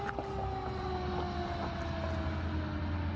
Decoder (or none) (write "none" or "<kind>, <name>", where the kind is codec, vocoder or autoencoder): none